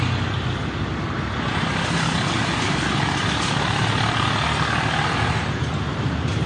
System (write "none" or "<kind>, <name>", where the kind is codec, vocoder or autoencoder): none